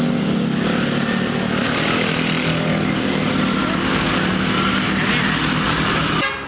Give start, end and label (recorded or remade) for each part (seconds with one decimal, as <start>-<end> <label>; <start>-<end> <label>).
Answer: 0.0-6.5 recorded